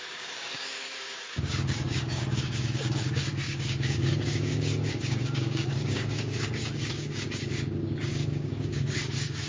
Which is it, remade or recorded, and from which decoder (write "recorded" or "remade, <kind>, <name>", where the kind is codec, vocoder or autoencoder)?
remade, codec, DAC